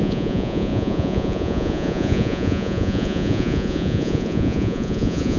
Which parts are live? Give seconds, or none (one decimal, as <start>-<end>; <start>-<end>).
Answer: none